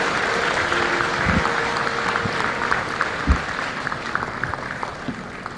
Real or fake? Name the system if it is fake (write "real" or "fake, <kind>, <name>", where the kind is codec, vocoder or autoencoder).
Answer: real